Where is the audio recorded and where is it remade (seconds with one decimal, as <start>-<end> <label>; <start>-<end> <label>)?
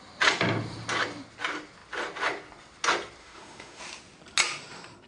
0.0-3.2 recorded; 3.2-3.8 remade; 3.8-5.1 recorded